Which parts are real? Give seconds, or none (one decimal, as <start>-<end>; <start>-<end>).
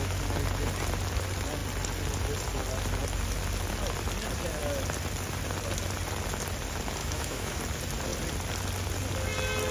0.0-7.0; 7.6-9.7